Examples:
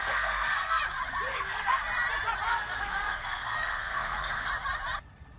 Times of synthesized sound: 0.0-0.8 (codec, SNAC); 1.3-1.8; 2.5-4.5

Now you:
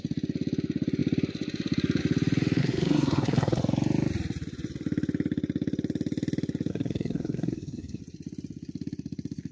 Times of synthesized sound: 2.6-3.6 (codec, SNAC); 6.7-8.0

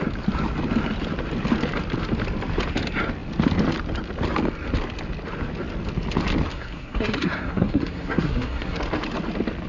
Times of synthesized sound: 6.5-8.8 (codec, SNAC)

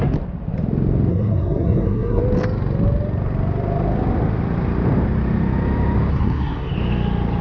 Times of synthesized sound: 1.1-2.2 (codec, SNAC); 6.1-6.7

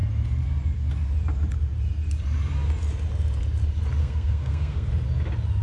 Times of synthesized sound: 4.0-4.9 (codec, SNAC)

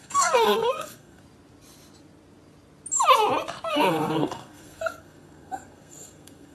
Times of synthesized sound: 0.0-1.2 (codec, SNAC); 3.7-6.5

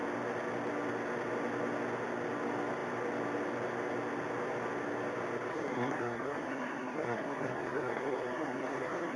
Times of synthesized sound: 5.5-9.2 (codec, SNAC)

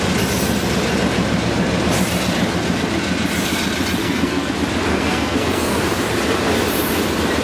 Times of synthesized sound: 4.0-4.5 (codec, SNAC); 4.9-5.8